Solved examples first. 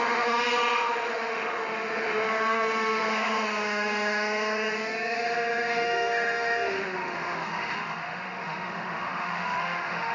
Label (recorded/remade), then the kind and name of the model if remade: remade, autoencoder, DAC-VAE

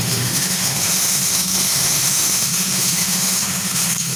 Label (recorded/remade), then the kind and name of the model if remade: remade, autoencoder, DAC-VAE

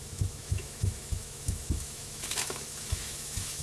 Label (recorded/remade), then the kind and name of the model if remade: remade, autoencoder, DAC-VAE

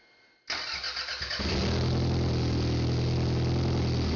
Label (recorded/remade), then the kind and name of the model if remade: recorded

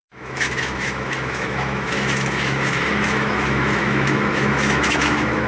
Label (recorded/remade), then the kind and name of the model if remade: remade, autoencoder, DAC-VAE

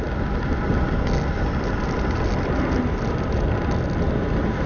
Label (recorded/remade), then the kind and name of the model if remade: recorded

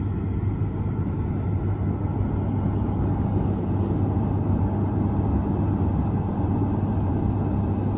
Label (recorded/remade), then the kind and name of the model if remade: recorded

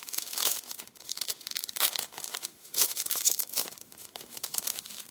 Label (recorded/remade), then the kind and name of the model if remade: remade, autoencoder, DAC-VAE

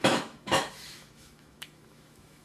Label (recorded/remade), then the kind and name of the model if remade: remade, autoencoder, DAC-VAE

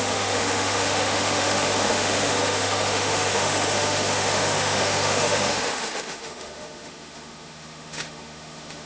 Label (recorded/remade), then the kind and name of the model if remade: remade, autoencoder, DAC-VAE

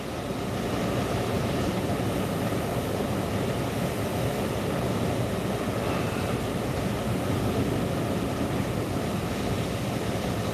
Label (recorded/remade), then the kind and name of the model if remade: recorded